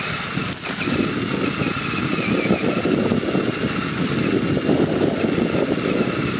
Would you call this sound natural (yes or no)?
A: yes